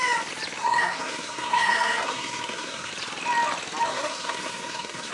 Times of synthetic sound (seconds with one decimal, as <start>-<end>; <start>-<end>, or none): 0.6-2.9; 3.9-5.1